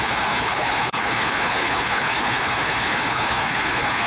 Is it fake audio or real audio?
fake